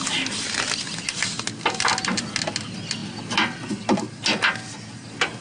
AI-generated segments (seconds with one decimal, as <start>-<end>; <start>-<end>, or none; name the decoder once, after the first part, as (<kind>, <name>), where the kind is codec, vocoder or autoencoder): none